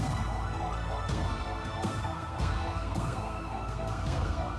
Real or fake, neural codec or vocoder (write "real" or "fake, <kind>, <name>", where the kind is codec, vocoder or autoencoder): fake, codec, SNAC